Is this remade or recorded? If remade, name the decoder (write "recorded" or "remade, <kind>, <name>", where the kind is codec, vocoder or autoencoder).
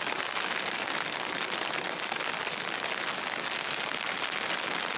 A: recorded